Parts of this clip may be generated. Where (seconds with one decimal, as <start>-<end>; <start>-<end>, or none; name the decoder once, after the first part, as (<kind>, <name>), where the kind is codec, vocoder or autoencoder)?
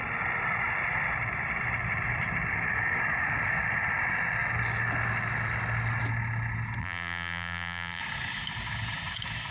6.8-8.0 (vocoder, BigVGAN v2)